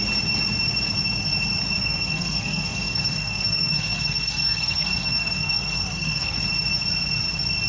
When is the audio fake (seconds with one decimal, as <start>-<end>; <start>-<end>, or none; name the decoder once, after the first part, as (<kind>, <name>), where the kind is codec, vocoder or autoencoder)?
1.8-6.4 (codec, SNAC)